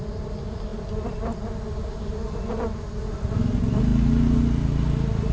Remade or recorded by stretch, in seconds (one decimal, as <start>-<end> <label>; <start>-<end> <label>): 0.0-5.3 recorded